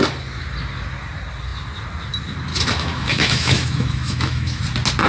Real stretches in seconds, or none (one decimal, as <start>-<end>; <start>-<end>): 0.0-2.5; 4.6-5.1